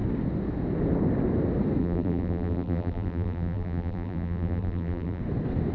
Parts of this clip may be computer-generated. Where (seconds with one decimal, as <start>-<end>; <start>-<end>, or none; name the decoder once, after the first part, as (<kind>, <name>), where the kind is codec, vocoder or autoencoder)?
1.8-5.2 (vocoder, BigVGAN v2)